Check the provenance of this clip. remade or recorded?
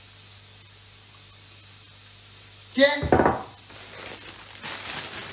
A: recorded